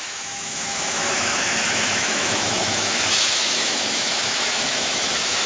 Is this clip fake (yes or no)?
yes